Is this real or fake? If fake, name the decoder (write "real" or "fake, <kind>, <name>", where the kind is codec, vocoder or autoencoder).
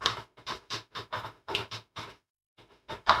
fake, autoencoder, DAC-VAE